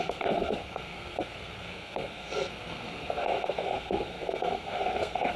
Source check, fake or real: fake